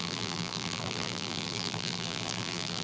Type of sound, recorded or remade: remade